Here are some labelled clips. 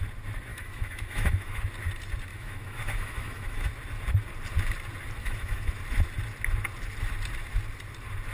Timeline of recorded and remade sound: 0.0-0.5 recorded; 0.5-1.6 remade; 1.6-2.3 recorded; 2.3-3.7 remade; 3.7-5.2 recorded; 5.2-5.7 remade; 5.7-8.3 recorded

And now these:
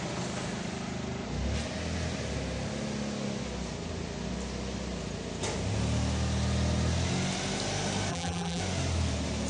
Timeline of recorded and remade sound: 0.0-8.1 recorded; 8.1-8.6 remade; 8.6-9.5 recorded

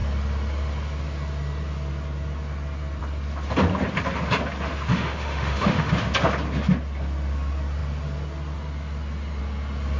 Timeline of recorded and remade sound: 0.0-4.9 recorded; 4.9-5.9 remade; 5.9-10.0 recorded

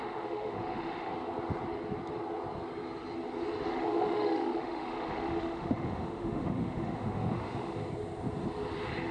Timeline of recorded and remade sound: 0.0-1.1 remade; 1.1-3.7 recorded; 3.7-7.8 remade; 7.8-9.1 recorded

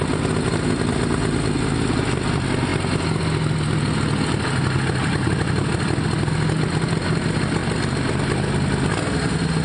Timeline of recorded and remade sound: 0.0-9.6 recorded